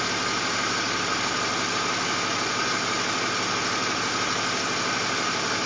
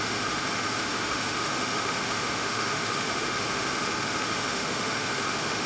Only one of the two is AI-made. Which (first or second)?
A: second